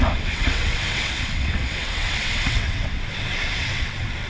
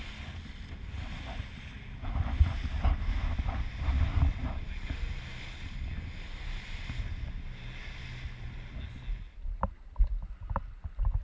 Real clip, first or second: second